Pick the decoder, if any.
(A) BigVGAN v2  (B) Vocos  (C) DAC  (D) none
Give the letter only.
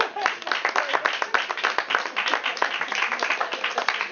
A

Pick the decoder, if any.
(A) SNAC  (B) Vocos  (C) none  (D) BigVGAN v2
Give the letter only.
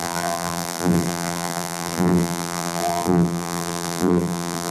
D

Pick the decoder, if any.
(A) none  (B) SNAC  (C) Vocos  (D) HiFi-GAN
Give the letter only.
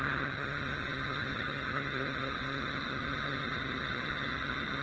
D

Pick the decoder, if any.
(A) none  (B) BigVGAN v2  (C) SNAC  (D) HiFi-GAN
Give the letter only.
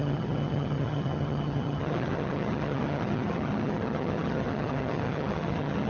D